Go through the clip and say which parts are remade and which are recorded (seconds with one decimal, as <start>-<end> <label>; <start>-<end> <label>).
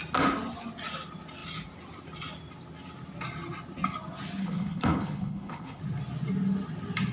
0.0-4.4 recorded; 4.4-5.8 remade; 5.8-7.1 recorded